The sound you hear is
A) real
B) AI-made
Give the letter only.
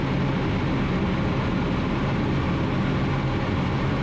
A